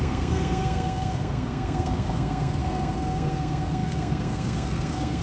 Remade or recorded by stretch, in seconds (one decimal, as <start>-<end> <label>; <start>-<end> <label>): 0.0-5.2 remade